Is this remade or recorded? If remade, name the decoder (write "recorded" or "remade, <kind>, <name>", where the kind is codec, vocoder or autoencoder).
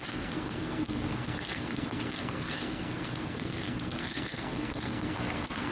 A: remade, codec, SNAC